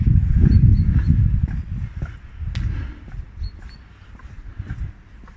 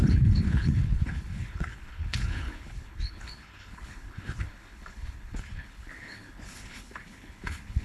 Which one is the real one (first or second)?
first